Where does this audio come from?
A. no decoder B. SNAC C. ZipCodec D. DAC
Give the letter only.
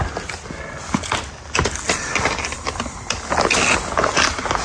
A